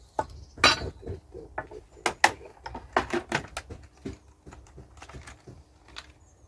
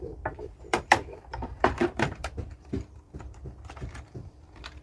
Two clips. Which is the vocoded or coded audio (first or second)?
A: second